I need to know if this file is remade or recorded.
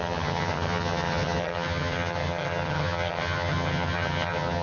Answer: remade